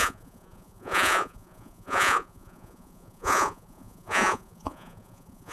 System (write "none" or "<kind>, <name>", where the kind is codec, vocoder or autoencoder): vocoder, Vocos